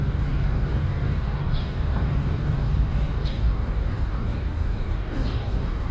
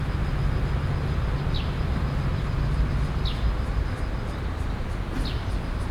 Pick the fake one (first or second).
first